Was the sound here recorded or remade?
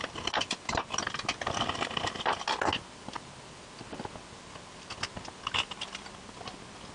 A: recorded